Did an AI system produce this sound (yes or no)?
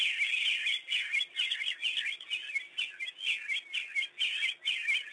no